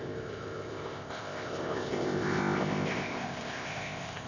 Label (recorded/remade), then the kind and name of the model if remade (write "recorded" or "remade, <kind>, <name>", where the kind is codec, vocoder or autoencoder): remade, codec, ZipCodec